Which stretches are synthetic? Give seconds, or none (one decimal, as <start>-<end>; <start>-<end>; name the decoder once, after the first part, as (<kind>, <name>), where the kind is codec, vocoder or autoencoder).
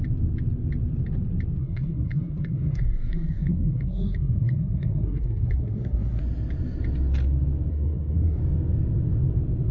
1.6-6.2 (codec, SNAC); 7.7-8.4